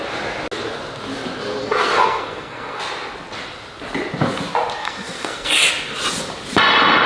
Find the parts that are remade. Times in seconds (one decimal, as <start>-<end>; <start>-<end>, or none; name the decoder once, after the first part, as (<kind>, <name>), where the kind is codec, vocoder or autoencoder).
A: 1.6-2.8 (codec, SNAC); 4.8-5.7